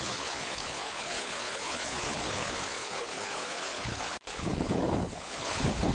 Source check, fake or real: fake